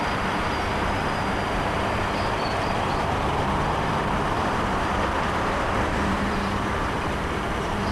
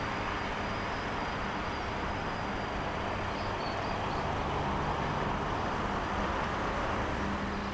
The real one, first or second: second